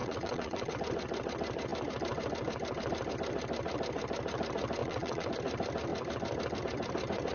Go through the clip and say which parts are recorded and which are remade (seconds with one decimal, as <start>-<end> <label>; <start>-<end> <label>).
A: 0.0-0.7 remade; 0.7-4.8 recorded; 4.8-5.3 remade; 5.3-7.3 recorded